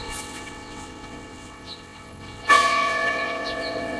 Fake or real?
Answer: fake